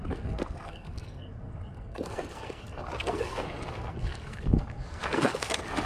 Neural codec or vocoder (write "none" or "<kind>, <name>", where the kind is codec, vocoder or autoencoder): codec, SNAC